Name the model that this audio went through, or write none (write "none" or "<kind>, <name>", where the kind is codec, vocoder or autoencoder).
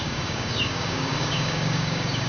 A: codec, DAC